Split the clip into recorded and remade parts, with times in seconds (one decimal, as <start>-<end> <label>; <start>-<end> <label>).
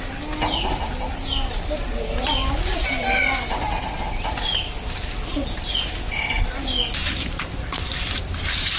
0.0-8.8 recorded